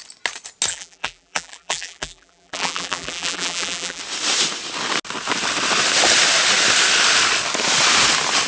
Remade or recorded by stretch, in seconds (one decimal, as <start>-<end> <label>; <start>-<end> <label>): 0.0-0.7 recorded; 0.7-4.0 remade; 4.0-8.5 recorded